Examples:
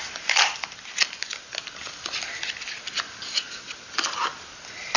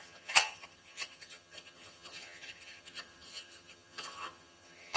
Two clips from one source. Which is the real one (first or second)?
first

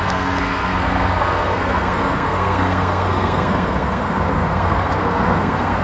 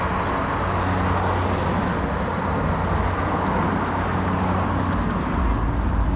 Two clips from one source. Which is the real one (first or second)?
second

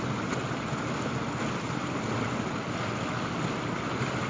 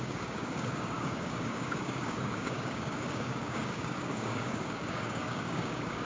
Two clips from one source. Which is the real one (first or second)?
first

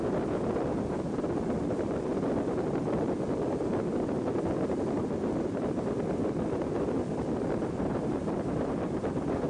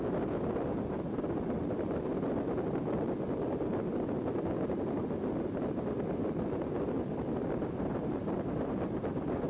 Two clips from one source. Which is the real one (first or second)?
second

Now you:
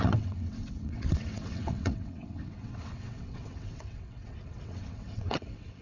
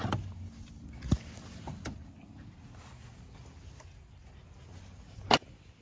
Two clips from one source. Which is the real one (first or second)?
second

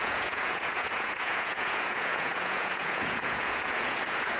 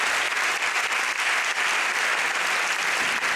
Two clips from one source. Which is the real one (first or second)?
second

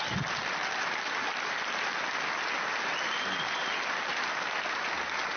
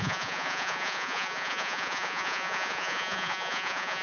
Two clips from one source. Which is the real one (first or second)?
first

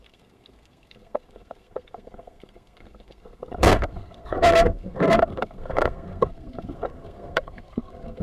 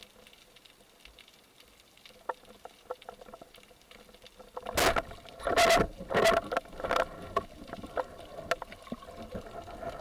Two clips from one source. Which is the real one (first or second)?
second